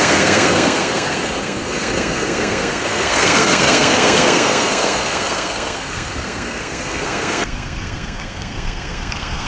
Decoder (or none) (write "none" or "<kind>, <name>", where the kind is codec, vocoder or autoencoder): codec, SNAC